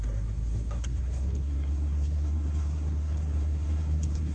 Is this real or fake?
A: fake